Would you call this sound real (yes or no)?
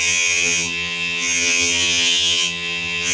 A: no